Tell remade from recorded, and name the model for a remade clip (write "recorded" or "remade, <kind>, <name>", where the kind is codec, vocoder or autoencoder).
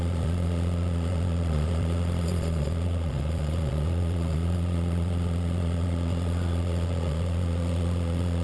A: remade, vocoder, Vocos